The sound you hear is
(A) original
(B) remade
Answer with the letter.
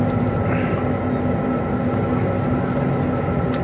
A